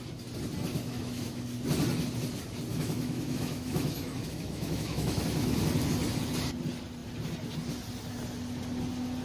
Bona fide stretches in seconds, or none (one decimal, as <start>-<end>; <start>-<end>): 0.0-0.7; 1.4-2.7; 5.6-9.2